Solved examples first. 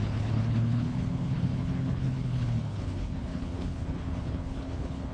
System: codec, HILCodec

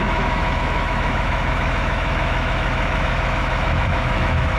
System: autoencoder, DAC-VAE